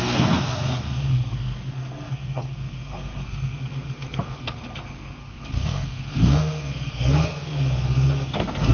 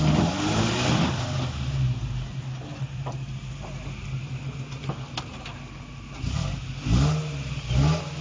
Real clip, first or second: second